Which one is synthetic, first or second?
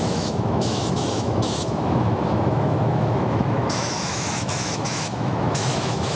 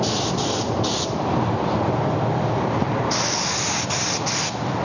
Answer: first